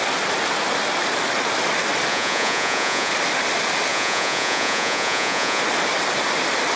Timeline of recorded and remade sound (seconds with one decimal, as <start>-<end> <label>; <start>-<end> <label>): 0.0-2.1 recorded; 2.1-3.1 remade; 3.1-3.9 recorded; 3.9-5.6 remade; 5.6-6.8 recorded